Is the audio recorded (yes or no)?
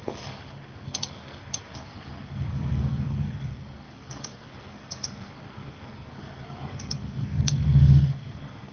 no